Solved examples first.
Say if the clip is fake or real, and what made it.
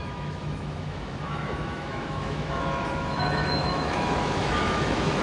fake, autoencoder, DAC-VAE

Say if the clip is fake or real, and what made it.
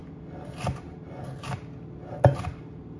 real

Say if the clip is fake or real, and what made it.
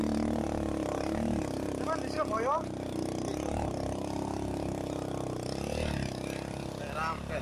real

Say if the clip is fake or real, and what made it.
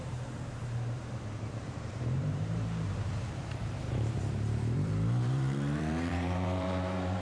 fake, vocoder, BigVGAN v2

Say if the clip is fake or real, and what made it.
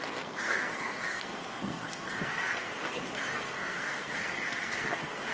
fake, codec, SNAC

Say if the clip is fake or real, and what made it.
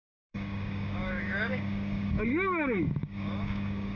fake, codec, DAC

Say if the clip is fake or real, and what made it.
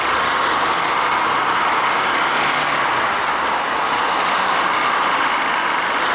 real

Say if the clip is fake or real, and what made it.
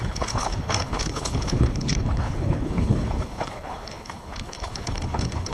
fake, codec, HILCodec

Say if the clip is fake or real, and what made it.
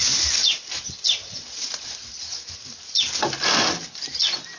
real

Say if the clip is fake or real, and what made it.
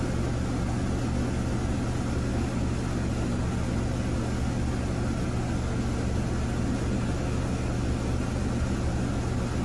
real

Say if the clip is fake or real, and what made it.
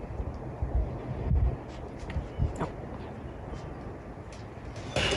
real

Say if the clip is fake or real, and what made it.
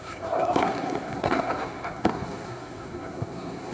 fake, codec, SNAC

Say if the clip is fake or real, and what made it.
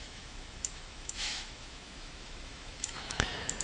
fake, autoencoder, DAC-VAE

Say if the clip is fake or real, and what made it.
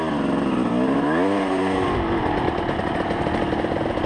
real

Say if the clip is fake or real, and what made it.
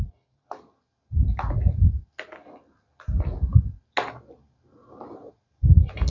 real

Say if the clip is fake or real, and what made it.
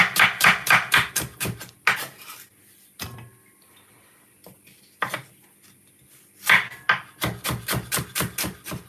real